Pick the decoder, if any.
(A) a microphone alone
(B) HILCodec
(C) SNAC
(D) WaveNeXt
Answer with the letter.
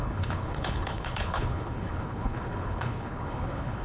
B